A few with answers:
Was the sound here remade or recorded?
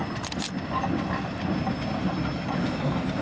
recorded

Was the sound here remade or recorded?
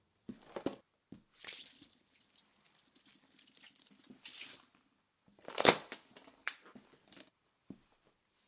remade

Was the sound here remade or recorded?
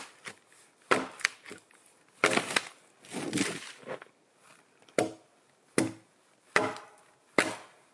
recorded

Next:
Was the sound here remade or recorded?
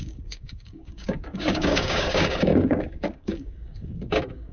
remade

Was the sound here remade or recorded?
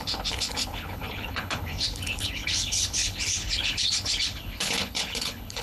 remade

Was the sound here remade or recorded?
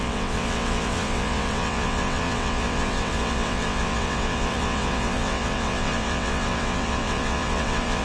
remade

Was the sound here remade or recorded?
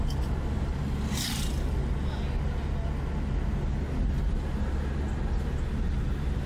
recorded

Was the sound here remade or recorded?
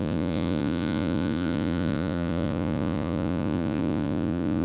remade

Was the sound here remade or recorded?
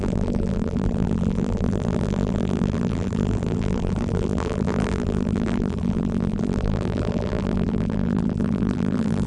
remade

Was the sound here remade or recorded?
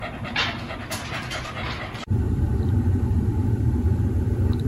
remade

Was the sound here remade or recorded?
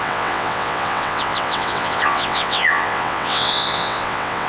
remade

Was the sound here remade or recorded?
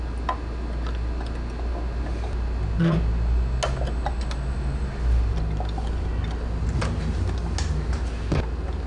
recorded